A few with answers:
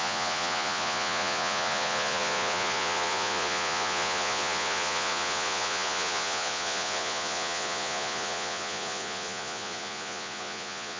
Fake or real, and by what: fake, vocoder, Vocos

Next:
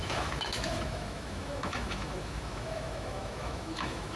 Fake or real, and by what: fake, autoencoder, DAC-VAE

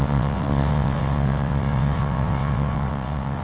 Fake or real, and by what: fake, vocoder, WaveNeXt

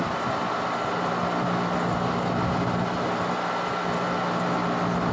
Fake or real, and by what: real